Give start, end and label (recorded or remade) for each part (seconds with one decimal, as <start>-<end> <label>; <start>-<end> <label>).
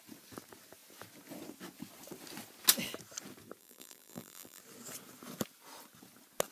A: 0.0-3.6 recorded; 3.6-4.6 remade; 4.6-6.5 recorded